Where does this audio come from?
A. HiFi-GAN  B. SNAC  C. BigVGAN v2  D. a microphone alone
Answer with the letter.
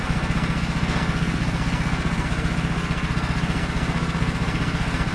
B